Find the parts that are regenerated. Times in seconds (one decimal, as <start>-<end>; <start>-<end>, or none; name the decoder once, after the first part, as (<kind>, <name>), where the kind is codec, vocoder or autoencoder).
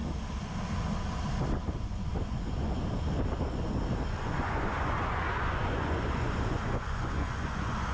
1.6-2.8 (vocoder, Vocos); 4.2-7.9